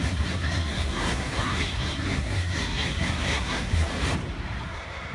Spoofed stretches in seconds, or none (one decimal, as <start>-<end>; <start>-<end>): 0.0-3.9; 4.6-5.1